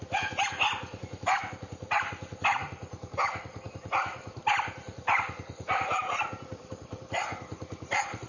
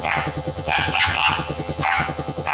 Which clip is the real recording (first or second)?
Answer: first